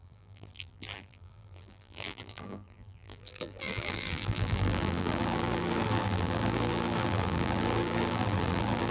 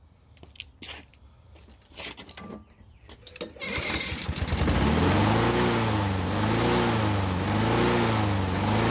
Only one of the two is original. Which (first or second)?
second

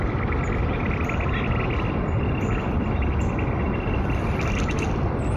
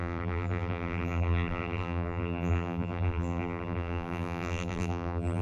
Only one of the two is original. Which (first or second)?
first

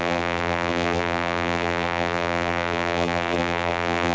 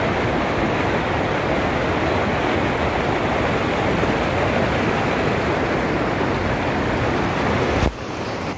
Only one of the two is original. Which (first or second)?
second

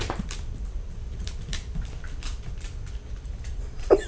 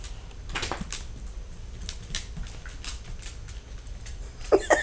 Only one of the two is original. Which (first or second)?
second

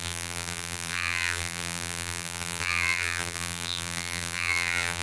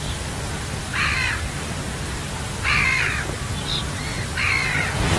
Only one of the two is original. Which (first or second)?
second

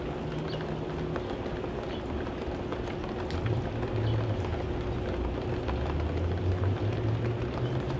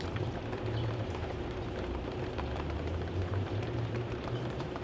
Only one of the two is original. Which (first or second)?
first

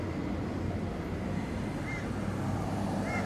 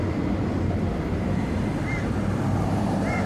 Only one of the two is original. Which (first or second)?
first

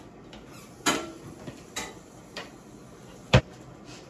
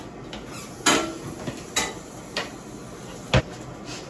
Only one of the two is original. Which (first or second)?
second